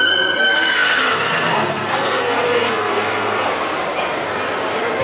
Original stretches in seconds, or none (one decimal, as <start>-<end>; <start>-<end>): 3.5-5.0